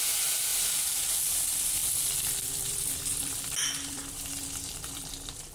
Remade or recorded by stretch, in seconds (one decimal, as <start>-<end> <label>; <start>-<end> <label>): 0.0-0.5 remade; 0.5-1.1 recorded; 1.1-5.5 remade